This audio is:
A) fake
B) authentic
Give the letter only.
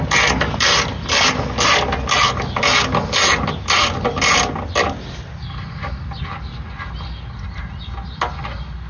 B